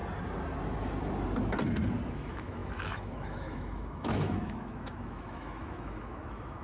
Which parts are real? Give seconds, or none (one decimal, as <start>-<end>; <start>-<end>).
0.0-2.1